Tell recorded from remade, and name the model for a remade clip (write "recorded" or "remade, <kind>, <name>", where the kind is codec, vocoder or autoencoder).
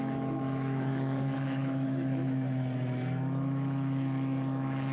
remade, autoencoder, DAC-VAE